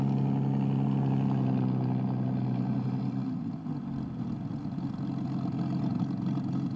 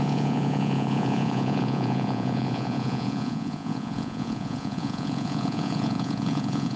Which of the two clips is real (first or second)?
first